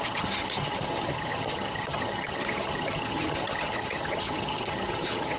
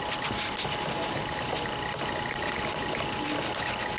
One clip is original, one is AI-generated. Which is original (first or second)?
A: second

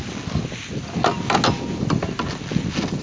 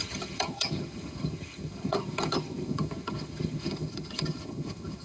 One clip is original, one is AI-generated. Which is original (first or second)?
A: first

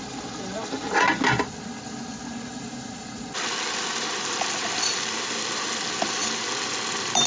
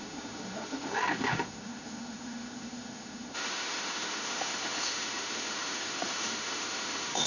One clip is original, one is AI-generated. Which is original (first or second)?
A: first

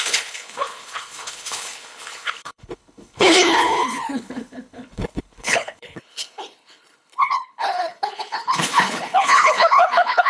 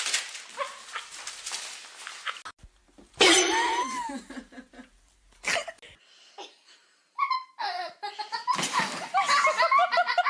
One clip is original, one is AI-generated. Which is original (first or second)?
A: second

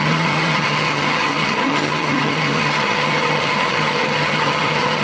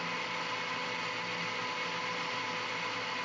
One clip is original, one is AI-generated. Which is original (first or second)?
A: second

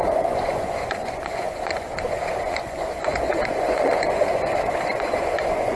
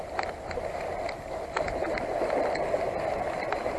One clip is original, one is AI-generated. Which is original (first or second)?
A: second